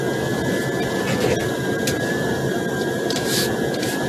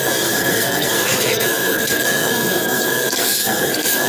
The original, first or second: first